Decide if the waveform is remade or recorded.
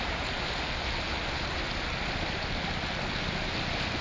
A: recorded